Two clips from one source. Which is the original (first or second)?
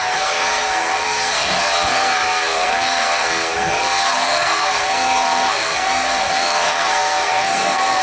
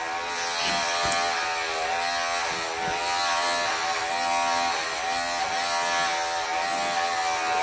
second